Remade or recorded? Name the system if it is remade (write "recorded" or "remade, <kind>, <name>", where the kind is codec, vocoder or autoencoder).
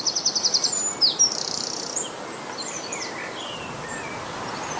recorded